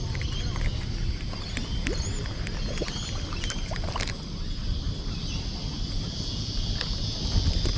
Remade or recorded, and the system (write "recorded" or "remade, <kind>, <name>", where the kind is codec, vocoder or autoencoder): recorded